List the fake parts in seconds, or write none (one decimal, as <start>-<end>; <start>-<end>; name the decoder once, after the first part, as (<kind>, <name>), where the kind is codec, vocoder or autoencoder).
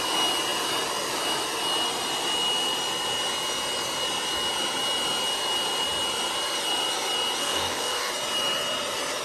7.4-8.1 (codec, DAC)